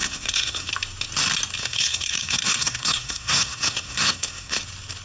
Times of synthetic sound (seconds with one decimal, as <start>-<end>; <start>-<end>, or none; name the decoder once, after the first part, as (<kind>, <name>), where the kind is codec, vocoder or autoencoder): 0.0-0.7 (codec, SNAC); 1.6-4.6